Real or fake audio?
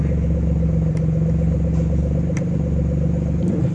real